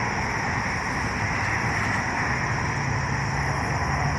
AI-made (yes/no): no